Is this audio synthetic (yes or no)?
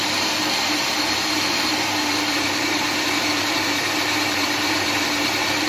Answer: yes